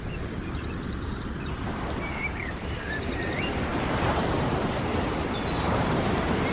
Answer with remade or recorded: remade